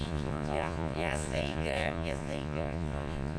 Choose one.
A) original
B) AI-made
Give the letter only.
B